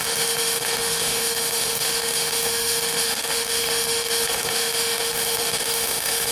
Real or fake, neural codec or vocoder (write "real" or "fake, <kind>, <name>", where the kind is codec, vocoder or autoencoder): fake, autoencoder, DAC-VAE